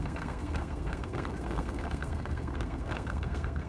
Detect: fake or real fake